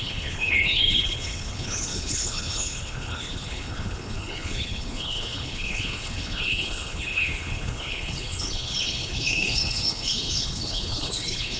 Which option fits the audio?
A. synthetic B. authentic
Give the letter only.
A